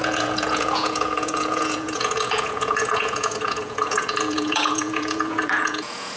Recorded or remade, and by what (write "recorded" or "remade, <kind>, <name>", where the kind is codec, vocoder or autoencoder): remade, vocoder, Vocos